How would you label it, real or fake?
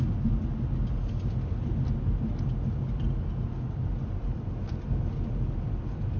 real